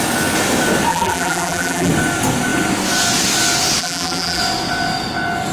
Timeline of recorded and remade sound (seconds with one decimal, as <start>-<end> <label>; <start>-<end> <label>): 0.0-0.9 recorded; 0.9-1.9 remade; 1.9-3.8 recorded; 3.8-4.4 remade; 4.4-5.5 recorded